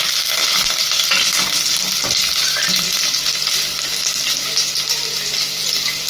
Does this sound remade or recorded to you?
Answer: recorded